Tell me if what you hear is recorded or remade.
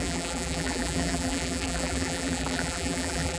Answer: remade